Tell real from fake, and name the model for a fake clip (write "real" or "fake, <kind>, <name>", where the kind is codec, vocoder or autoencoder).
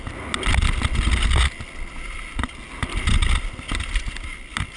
real